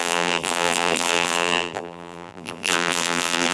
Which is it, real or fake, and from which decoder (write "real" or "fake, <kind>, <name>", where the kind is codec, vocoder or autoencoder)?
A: fake, vocoder, BigVGAN v2